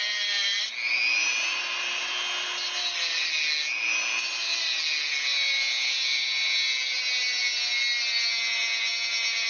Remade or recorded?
recorded